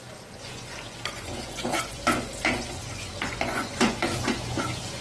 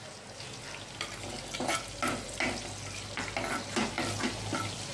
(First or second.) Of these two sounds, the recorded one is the second